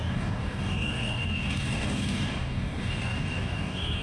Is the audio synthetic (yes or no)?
yes